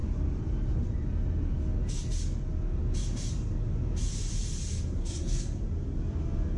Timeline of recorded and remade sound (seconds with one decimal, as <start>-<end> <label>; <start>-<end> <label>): 0.0-5.0 recorded; 5.0-5.6 remade; 5.6-6.6 recorded